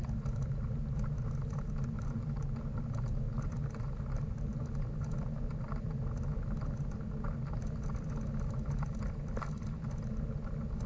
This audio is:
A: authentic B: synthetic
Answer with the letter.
A